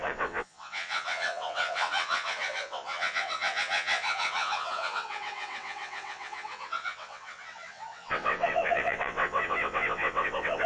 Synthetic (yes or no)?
yes